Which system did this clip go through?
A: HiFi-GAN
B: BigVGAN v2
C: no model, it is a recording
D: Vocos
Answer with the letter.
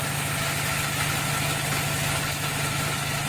C